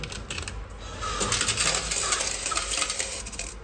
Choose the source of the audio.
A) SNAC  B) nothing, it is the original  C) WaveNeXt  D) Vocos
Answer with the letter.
B